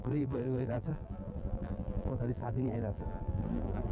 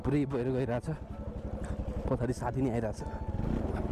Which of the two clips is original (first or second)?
second